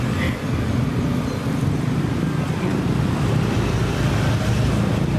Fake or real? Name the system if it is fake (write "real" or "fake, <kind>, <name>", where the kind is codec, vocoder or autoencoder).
real